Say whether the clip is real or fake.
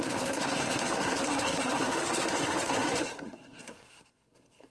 fake